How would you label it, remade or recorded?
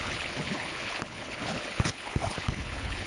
remade